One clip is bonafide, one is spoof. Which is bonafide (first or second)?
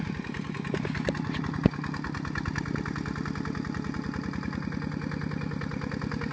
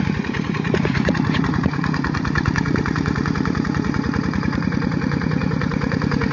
first